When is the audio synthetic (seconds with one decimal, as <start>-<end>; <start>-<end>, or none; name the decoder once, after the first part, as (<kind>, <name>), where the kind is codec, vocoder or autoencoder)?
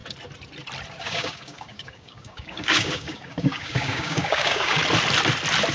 1.0-4.8 (codec, DAC)